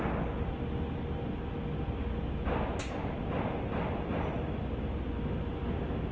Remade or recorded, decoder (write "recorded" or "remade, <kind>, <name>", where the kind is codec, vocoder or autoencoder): recorded